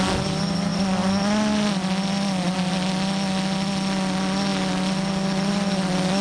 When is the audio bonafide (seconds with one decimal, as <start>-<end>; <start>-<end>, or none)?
0.0-6.2